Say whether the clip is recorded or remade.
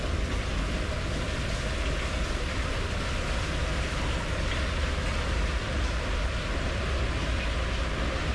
recorded